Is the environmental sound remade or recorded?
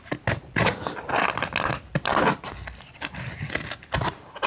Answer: recorded